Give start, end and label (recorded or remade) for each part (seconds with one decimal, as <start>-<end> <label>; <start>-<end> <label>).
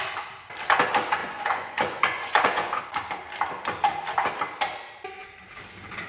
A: 0.0-1.2 recorded; 1.2-2.8 remade; 2.8-6.1 recorded